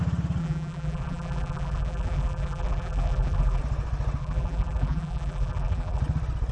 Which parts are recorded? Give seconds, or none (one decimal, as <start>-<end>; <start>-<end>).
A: 0.0-0.4; 3.6-4.2; 6.0-6.5